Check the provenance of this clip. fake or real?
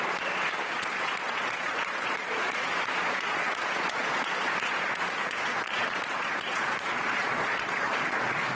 fake